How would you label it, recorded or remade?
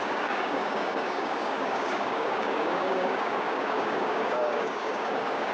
remade